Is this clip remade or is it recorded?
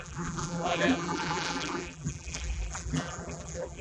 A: remade